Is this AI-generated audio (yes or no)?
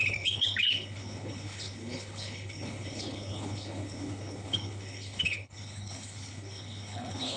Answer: yes